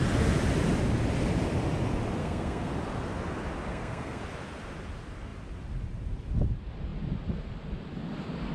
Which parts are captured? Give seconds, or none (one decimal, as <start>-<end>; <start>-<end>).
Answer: 0.0-2.2; 2.7-3.7; 4.2-8.5

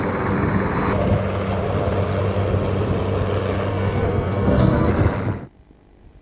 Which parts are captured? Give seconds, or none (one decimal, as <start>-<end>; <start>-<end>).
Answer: 0.0-3.7; 4.9-6.2

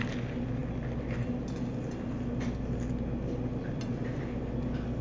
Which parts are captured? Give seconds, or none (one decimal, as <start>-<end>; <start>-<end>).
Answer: 0.0-5.0

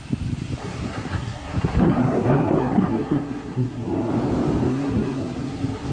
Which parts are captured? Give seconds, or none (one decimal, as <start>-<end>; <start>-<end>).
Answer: 0.0-0.6; 4.1-4.7

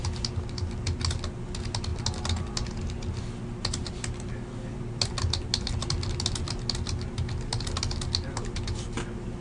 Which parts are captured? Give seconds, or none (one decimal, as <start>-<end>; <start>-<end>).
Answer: 0.0-9.4

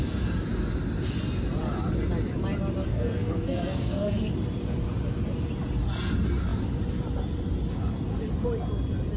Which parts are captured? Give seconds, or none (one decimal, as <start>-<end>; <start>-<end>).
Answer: 0.0-2.9; 4.3-9.2

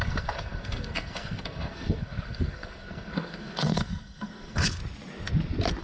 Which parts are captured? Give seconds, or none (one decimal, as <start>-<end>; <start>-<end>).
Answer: 4.8-5.8